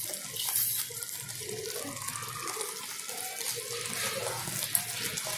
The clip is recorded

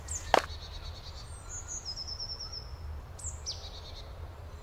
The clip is recorded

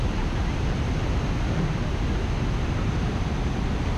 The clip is recorded